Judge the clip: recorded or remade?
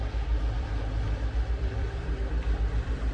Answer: remade